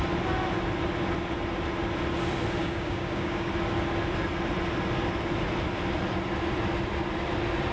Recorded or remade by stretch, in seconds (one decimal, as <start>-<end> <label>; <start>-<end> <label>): 0.0-2.6 recorded; 2.6-3.5 remade; 3.5-7.7 recorded